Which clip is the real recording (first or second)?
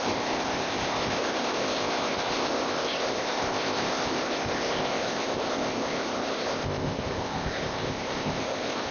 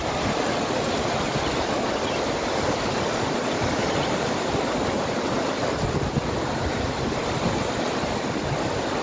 second